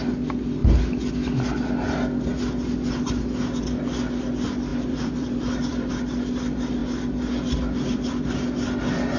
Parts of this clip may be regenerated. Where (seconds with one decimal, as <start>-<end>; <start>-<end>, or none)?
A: 4.7-5.9